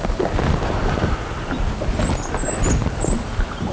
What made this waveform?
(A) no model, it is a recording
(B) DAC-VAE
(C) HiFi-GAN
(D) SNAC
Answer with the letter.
A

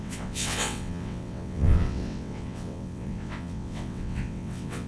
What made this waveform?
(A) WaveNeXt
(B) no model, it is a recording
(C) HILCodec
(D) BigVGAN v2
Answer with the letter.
A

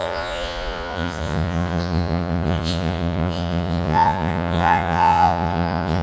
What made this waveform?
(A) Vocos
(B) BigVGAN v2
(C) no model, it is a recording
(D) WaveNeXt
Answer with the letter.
A